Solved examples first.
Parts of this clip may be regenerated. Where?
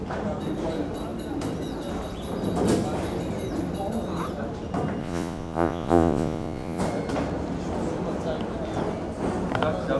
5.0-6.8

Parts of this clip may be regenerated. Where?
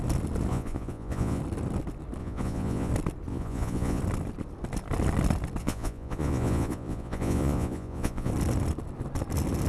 0.5-1.4; 2.2-2.9; 3.3-4.0; 5.6-8.3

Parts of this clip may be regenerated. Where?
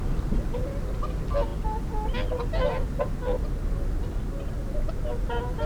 none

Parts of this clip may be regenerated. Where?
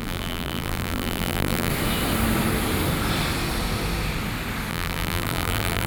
0.0-1.7; 4.7-5.9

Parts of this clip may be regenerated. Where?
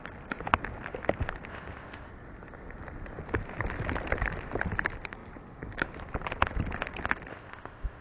1.5-2.1; 7.3-8.0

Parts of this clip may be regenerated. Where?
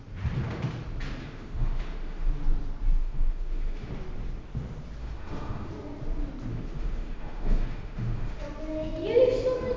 1.2-2.3; 3.0-3.9; 5.0-5.7; 6.5-8.4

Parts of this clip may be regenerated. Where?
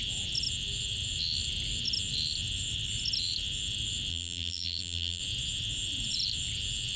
4.1-5.2